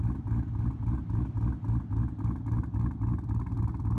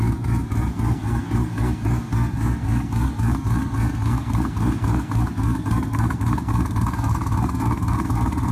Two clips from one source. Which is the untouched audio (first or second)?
first